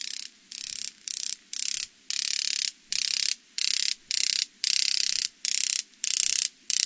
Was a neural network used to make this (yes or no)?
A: no